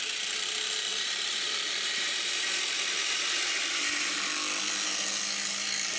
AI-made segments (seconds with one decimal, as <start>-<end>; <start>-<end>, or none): 0.9-4.2